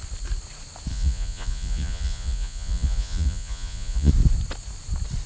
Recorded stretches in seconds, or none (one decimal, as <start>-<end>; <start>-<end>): 0.0-0.9; 4.1-5.3